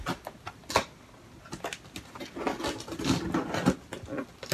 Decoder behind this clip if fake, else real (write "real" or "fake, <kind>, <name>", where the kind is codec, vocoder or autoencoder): real